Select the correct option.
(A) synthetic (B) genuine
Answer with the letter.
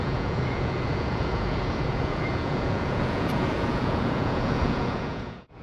A